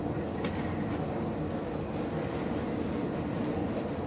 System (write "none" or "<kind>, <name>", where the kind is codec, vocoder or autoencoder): none